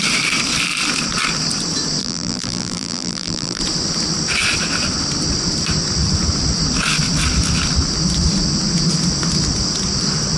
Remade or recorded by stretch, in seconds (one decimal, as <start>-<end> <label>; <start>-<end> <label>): 0.0-2.0 recorded; 2.0-3.6 remade; 3.6-10.4 recorded